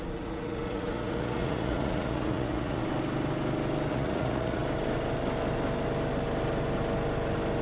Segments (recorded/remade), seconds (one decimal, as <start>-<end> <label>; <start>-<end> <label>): 0.0-2.8 remade; 2.8-3.9 recorded; 3.9-4.6 remade; 4.6-7.6 recorded

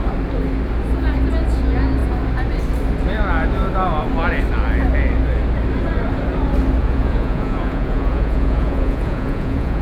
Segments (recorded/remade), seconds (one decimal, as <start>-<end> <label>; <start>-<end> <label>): 0.0-6.8 recorded; 6.8-9.8 remade